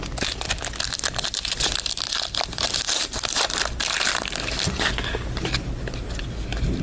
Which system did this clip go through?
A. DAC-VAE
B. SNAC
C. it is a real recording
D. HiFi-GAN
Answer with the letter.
C